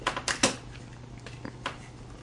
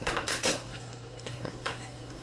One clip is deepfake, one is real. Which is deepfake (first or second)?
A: second